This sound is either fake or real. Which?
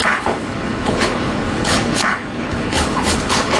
fake